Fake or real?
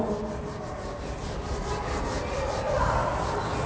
real